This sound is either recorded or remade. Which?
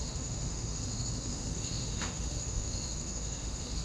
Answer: remade